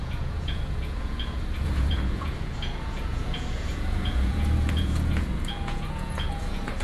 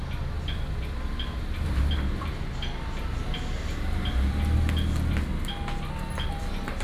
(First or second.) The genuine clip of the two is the second